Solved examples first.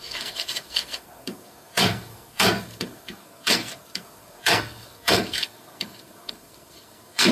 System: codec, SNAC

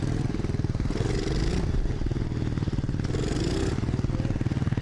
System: none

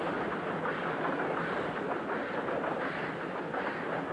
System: none